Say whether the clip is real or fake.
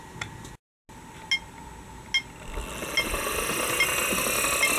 real